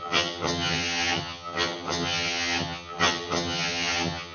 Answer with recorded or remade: remade